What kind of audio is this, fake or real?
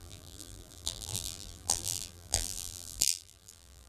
fake